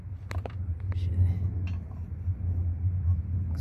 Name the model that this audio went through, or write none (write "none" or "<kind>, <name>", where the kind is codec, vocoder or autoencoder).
none